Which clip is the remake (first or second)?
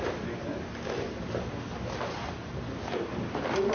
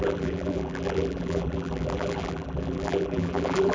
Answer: second